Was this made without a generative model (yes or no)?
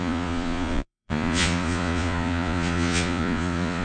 no